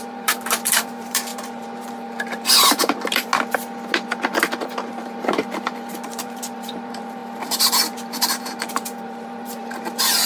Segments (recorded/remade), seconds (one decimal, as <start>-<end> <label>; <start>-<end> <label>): 0.0-3.3 remade; 3.3-4.4 recorded; 4.4-10.3 remade